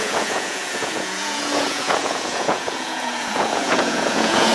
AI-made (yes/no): yes